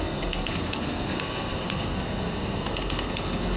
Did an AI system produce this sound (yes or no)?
yes